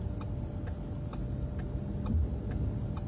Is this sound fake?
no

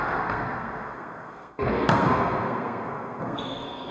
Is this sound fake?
yes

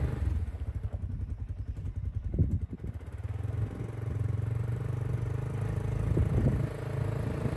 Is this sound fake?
no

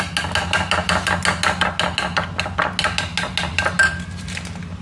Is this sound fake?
no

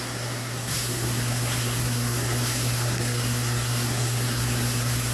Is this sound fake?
yes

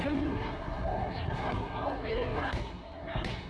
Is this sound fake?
yes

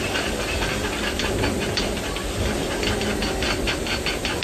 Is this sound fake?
no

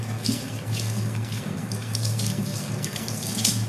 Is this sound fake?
yes